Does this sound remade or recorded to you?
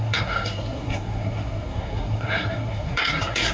remade